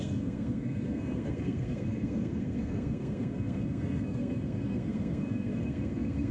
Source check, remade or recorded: remade